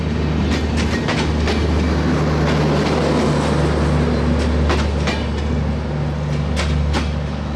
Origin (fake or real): real